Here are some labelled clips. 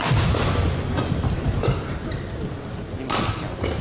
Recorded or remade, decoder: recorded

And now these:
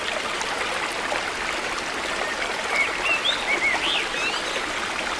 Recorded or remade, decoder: recorded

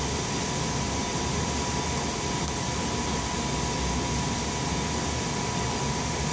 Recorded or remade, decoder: recorded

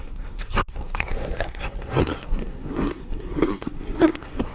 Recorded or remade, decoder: remade, codec, SNAC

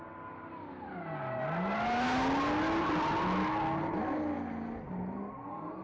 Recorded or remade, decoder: recorded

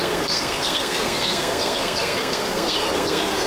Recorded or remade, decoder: remade, codec, SNAC